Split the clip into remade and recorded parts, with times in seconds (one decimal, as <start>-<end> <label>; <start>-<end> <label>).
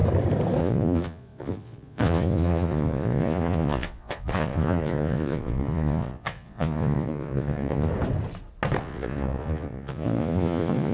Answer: 0.0-0.6 recorded; 0.6-7.9 remade; 7.9-8.8 recorded; 8.8-10.9 remade